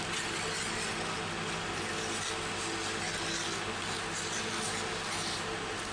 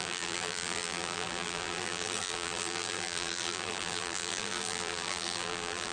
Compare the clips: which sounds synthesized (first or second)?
second